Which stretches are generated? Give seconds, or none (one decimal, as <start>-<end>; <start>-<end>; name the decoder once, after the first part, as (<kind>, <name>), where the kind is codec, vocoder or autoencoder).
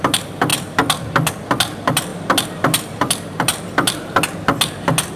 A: none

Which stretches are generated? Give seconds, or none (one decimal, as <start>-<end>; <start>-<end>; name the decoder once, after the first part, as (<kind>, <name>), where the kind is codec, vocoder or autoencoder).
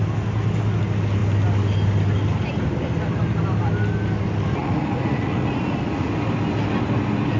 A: 4.6-6.1 (vocoder, Vocos)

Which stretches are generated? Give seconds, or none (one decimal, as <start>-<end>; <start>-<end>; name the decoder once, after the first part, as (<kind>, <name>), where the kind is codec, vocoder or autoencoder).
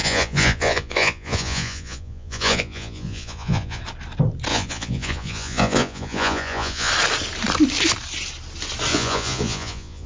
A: 0.0-3.8 (vocoder, Vocos); 4.5-6.9; 8.9-10.1